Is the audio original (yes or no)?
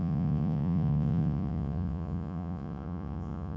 no